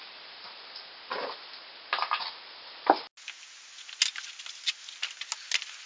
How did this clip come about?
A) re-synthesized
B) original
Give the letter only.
B